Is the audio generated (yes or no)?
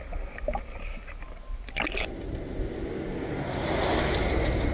no